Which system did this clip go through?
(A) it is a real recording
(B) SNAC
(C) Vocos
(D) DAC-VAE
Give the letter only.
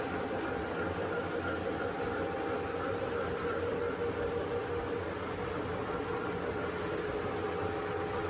A